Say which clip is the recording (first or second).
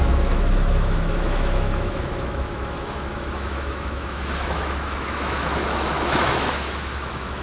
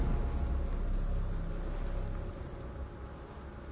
second